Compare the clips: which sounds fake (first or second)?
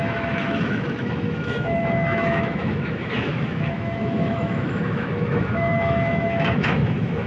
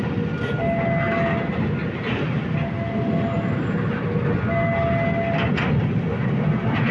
first